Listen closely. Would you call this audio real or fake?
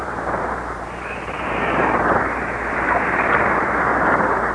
fake